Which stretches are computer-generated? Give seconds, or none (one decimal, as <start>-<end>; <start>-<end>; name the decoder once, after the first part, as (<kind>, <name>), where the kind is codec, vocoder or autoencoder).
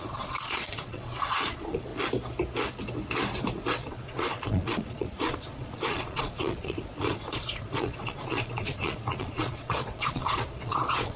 0.0-1.9 (vocoder, Vocos); 3.8-11.2